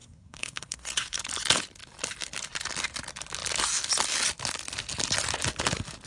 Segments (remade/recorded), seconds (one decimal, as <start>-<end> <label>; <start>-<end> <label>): 0.0-1.2 remade; 1.2-6.1 recorded